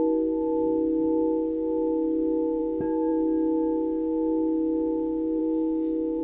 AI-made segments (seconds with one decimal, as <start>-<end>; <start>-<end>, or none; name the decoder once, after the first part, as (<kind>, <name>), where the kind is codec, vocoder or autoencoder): 2.6-3.1 (autoencoder, DAC-VAE); 5.4-6.2